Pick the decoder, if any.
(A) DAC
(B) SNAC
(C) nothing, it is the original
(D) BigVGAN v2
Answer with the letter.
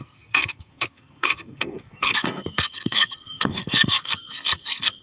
B